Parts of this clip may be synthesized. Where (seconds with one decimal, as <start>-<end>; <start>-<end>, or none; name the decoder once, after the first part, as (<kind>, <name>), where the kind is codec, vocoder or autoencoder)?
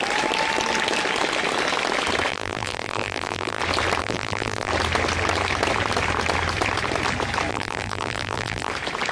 2.3-3.6 (vocoder, BigVGAN v2); 4.0-4.7; 7.5-8.7